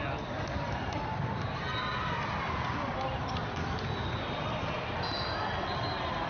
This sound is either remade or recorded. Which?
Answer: recorded